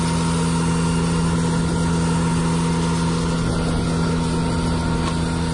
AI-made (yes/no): no